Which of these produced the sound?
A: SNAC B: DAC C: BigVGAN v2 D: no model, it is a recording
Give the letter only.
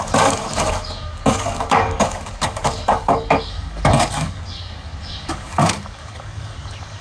B